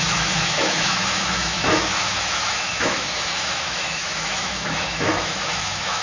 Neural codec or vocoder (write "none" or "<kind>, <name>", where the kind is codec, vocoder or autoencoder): autoencoder, DAC-VAE